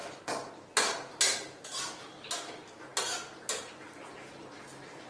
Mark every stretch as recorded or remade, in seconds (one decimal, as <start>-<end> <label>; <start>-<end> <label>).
0.0-5.1 recorded